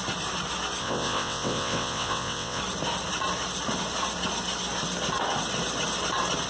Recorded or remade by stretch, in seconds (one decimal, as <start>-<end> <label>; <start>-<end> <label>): 0.0-0.8 recorded; 0.8-2.6 remade; 2.6-6.5 recorded